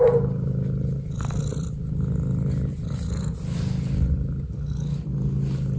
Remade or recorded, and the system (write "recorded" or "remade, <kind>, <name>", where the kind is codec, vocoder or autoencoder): recorded